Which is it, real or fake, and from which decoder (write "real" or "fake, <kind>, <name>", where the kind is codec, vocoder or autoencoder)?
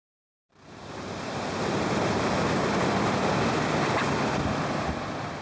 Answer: fake, vocoder, BigVGAN v2